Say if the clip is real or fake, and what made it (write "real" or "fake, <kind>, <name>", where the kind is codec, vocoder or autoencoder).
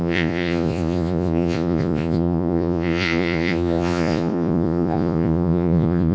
fake, vocoder, Vocos